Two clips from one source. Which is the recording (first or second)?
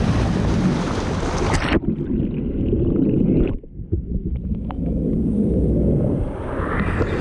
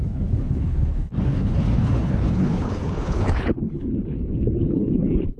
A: first